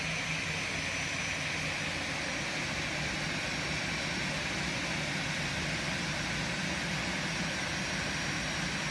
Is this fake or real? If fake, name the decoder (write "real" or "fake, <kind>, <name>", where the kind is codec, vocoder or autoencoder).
real